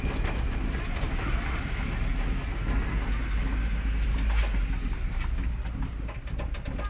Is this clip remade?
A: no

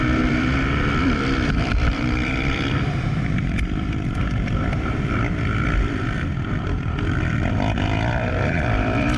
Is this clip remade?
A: yes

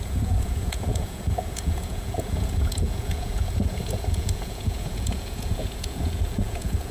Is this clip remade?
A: yes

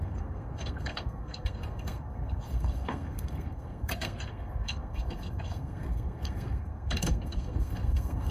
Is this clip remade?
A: yes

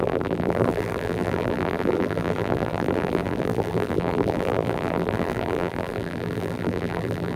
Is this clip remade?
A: yes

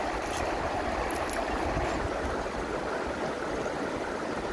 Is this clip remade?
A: no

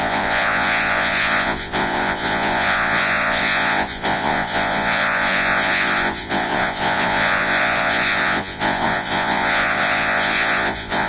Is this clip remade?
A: yes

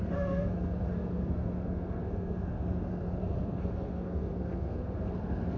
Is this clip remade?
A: yes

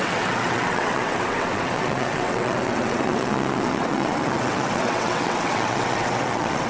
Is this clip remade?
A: yes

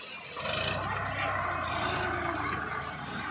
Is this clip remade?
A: no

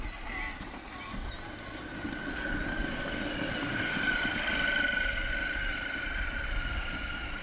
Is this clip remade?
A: no